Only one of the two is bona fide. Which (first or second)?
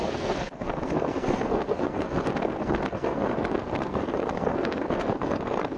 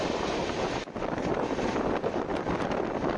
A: second